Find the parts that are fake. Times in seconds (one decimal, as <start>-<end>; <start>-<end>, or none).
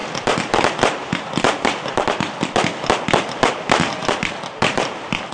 0.0-0.6; 1.0-2.7; 4.0-5.3